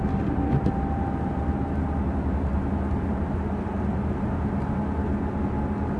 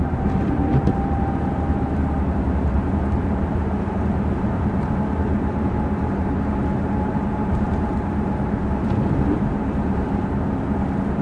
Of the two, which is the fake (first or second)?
second